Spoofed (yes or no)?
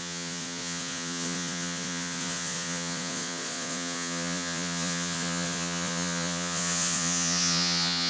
yes